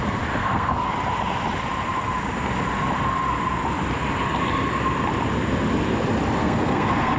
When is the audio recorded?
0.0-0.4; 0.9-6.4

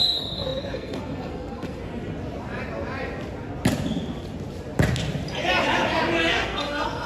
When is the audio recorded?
1.9-6.2

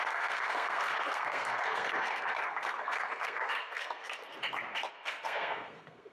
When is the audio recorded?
4.3-4.9

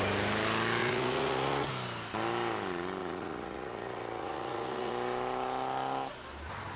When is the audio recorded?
0.0-0.8; 1.7-3.0; 4.9-6.8